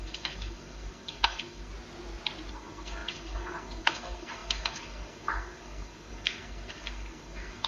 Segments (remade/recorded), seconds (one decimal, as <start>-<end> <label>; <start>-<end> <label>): 0.0-1.7 remade; 1.7-2.5 recorded; 2.5-7.7 remade